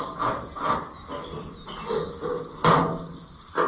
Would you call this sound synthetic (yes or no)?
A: no